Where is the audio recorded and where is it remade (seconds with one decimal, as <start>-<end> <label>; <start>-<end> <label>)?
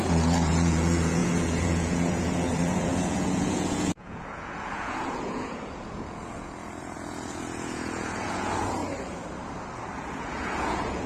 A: 0.0-8.8 remade; 8.8-10.1 recorded; 10.1-11.1 remade